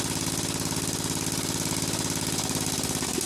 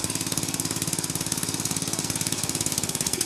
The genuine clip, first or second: first